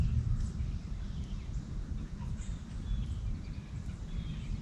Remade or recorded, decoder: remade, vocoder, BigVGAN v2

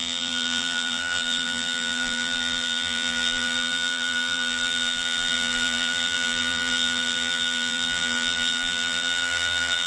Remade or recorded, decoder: remade, vocoder, BigVGAN v2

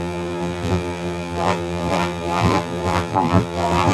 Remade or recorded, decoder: remade, vocoder, BigVGAN v2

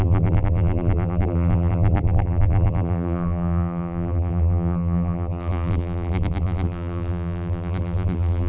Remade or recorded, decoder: remade, vocoder, BigVGAN v2